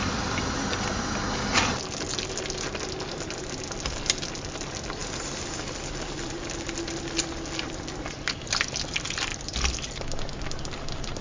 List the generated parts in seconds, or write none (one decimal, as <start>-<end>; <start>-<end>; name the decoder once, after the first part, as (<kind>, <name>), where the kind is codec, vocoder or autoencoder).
none

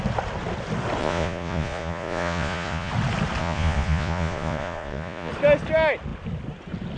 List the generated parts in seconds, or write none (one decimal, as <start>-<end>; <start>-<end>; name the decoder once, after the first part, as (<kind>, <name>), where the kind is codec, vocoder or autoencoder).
1.0-2.9 (vocoder, Vocos); 3.4-5.3